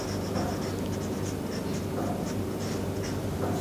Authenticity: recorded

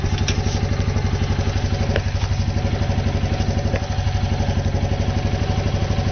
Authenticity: recorded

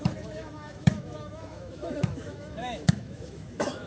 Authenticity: remade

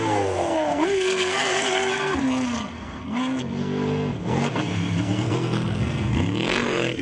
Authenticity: remade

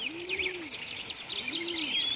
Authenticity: recorded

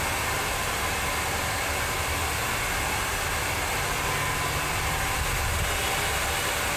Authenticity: recorded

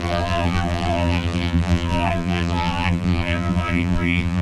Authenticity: remade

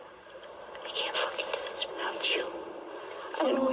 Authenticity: remade